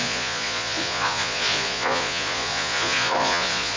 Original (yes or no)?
no